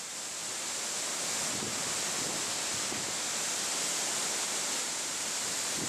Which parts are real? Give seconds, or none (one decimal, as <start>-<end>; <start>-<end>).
0.4-3.9

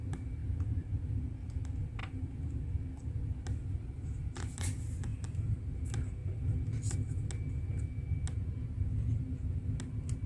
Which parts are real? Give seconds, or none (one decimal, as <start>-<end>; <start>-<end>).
0.0-0.4; 1.2-2.0; 2.5-5.1; 5.6-10.3

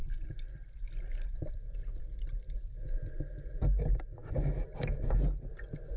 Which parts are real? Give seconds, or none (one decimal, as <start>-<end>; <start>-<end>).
0.0-6.0

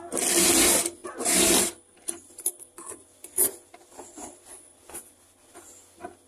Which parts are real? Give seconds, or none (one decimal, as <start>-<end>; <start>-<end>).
0.0-6.3

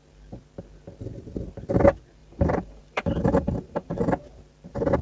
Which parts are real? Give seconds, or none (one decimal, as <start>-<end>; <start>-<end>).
0.0-2.2; 4.0-5.0